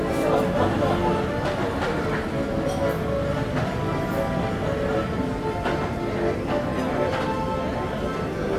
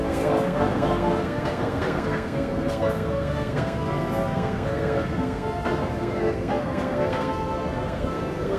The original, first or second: first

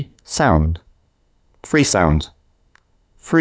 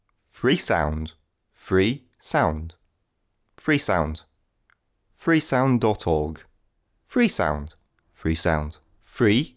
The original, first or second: second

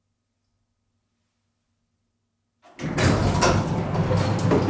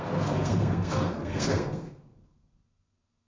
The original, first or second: first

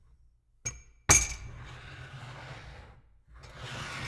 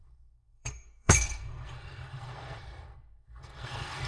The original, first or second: first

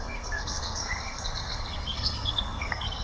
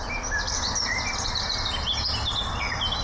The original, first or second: second